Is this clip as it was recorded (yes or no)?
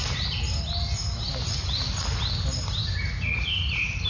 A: yes